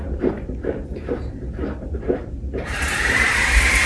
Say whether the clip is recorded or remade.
remade